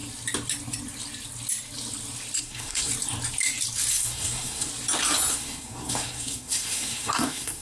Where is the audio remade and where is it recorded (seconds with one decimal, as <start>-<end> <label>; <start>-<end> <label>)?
0.0-2.4 recorded; 2.4-2.9 remade; 2.9-3.9 recorded; 3.9-4.7 remade; 4.7-5.3 recorded; 5.3-7.6 remade